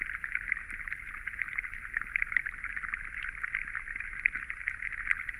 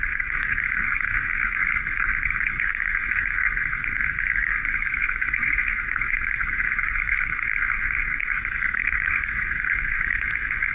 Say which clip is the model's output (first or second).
second